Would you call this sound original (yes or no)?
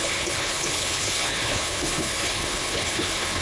no